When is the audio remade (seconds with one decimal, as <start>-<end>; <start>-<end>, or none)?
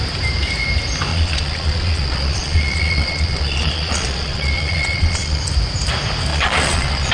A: 1.1-5.4; 6.3-7.1